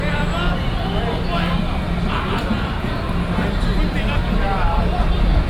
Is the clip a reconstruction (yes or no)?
no